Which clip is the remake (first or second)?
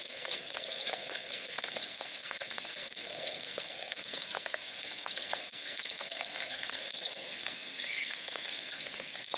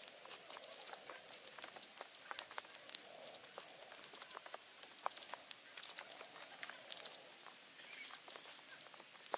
first